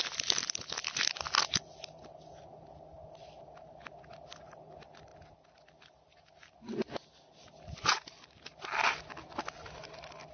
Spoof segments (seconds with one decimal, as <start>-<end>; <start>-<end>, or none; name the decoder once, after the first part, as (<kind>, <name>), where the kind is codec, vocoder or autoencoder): none